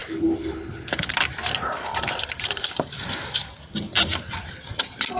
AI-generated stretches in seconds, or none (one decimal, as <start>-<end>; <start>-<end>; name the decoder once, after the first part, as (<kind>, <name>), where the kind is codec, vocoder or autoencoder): 0.0-1.1 (codec, HILCodec)